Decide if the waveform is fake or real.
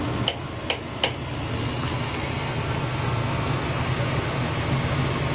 real